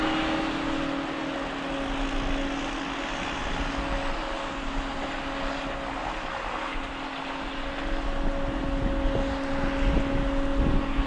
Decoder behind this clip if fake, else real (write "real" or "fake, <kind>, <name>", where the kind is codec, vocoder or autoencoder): real